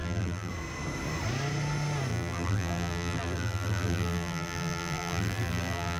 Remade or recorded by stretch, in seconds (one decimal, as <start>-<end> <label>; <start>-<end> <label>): 0.0-0.5 remade; 0.5-2.1 recorded; 2.1-6.0 remade